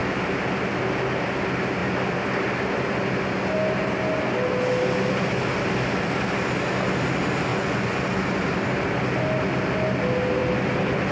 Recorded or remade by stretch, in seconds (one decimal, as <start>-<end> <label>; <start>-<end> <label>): 0.0-7.5 recorded; 7.5-8.0 remade; 8.0-11.1 recorded